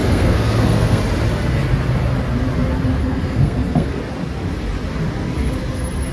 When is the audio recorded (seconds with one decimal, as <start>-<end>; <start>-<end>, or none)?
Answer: 1.0-3.0; 4.0-6.1